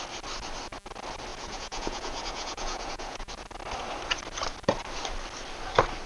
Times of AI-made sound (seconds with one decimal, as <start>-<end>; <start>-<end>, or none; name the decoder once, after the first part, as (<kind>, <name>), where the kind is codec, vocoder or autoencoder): 1.3-3.3 (vocoder, Vocos)